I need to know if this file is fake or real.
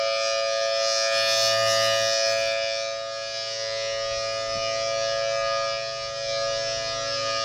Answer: real